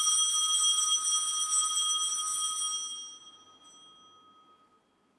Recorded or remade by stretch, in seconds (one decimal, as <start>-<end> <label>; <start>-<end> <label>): 0.0-5.2 recorded